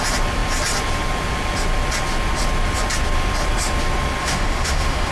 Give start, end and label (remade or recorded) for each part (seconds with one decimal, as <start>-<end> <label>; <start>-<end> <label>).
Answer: 0.0-4.2 recorded; 4.2-5.1 remade

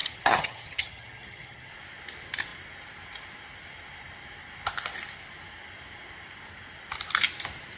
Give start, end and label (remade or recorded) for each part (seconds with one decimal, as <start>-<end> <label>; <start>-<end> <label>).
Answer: 0.0-1.7 remade; 1.7-7.8 recorded

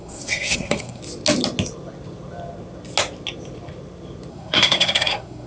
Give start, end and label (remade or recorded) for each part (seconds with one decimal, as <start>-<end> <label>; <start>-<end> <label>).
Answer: 0.0-1.0 remade; 1.0-4.3 recorded; 4.3-5.5 remade

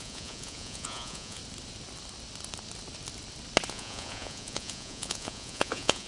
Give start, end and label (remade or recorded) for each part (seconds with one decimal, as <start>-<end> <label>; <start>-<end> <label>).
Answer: 0.0-1.4 remade; 1.4-3.7 recorded; 3.7-6.1 remade

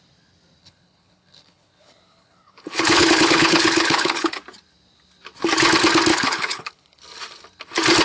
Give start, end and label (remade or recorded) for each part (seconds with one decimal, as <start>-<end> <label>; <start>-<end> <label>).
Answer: 0.0-0.6 recorded; 0.6-4.4 remade; 4.4-6.1 recorded; 6.1-7.0 remade; 7.0-8.0 recorded

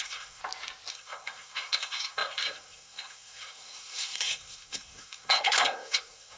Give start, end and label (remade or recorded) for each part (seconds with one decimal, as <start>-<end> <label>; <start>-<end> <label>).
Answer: 0.0-0.4 remade; 0.4-0.9 recorded; 0.9-6.4 remade